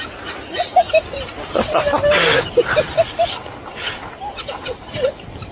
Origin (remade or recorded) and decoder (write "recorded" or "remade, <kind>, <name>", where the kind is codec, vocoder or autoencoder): recorded